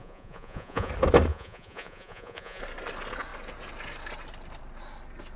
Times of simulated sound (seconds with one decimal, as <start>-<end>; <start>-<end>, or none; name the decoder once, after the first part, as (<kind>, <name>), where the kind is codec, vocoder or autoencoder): 0.0-0.9 (vocoder, Vocos); 1.3-2.6